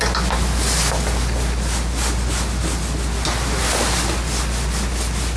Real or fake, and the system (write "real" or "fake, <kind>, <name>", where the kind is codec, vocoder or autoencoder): real